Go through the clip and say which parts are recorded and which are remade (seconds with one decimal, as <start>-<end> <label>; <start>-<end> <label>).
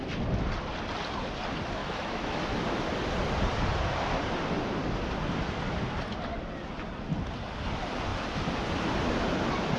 0.0-1.8 recorded; 1.8-2.4 remade; 2.4-9.8 recorded